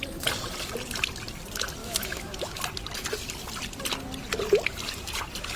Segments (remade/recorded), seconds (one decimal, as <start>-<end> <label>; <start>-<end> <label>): 0.0-1.8 recorded; 1.8-2.6 remade; 2.6-5.6 recorded